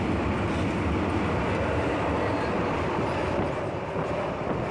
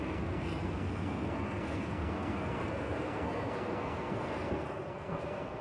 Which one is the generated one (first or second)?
second